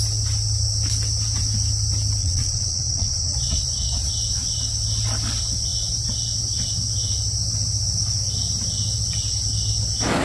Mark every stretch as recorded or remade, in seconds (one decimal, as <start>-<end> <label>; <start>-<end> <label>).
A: 0.0-2.2 recorded; 2.2-4.1 remade; 4.1-10.2 recorded